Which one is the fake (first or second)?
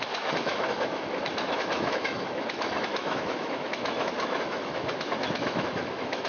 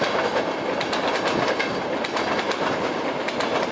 first